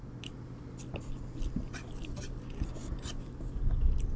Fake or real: real